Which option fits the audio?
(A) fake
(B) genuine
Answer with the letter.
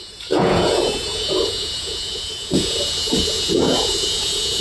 A